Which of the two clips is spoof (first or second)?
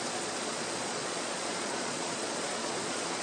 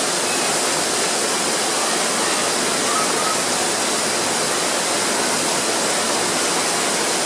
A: first